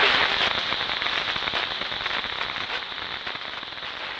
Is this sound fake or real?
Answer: real